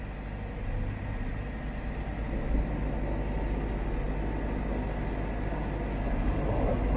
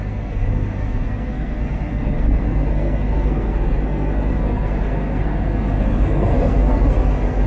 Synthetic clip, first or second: second